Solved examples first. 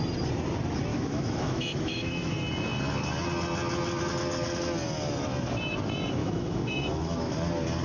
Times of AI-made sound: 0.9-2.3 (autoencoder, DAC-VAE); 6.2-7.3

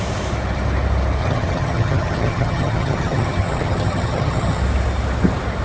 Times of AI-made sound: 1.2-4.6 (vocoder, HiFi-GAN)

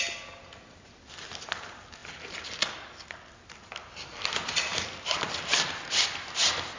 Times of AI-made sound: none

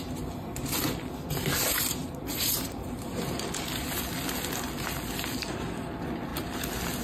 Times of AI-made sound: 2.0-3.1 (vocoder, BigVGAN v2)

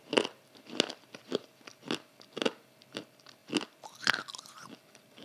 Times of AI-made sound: none